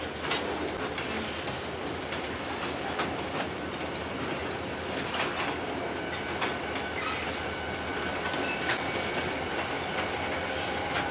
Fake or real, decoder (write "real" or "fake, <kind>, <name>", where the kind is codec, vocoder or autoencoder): real